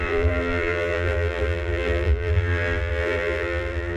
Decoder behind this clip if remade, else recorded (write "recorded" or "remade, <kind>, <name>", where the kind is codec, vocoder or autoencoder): remade, vocoder, BigVGAN v2